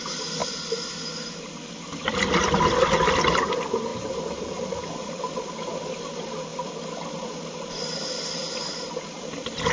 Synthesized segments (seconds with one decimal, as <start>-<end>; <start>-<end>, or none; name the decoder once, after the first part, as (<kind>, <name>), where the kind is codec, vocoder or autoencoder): none